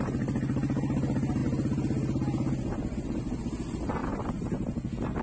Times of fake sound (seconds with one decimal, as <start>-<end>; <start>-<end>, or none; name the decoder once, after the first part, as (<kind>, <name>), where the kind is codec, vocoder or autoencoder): none